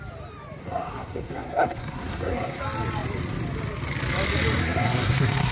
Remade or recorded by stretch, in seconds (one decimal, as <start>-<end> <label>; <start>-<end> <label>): 0.0-0.6 recorded; 0.6-2.6 remade; 2.6-4.6 recorded; 4.6-5.5 remade